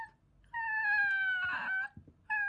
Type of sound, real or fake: real